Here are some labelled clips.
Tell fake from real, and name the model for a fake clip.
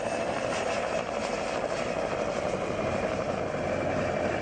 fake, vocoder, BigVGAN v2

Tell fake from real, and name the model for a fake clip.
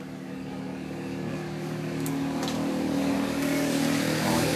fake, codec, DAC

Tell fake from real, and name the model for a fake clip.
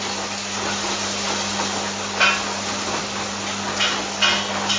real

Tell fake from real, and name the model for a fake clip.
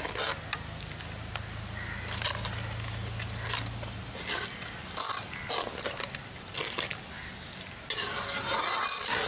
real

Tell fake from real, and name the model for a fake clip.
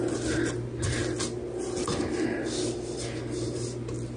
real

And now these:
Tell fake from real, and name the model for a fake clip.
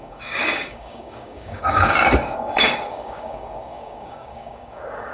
fake, codec, DAC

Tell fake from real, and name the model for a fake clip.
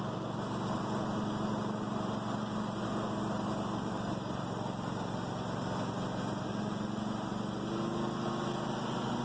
real